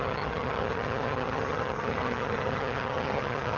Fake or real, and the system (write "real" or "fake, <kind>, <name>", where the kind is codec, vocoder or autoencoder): fake, vocoder, HiFi-GAN